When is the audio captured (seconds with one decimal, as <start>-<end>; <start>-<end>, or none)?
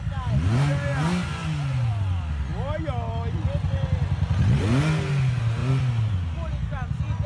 0.0-7.3